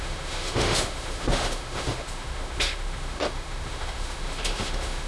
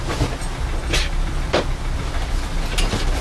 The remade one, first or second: first